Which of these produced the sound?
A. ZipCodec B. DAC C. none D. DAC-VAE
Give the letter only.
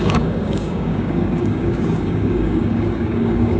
B